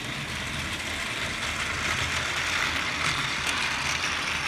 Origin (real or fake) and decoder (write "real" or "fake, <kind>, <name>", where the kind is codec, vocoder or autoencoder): real